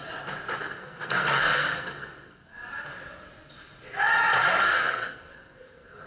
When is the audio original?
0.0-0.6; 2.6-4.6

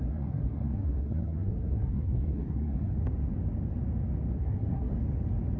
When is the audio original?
2.9-4.3; 4.9-5.6